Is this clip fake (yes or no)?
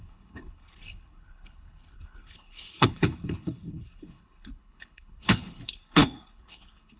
yes